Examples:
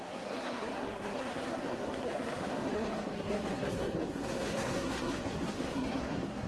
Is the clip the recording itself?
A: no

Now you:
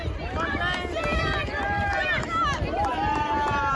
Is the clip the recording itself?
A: yes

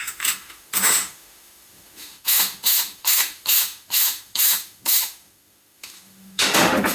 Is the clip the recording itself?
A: no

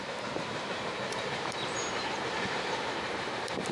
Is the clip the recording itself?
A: no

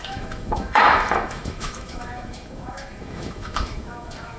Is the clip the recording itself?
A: no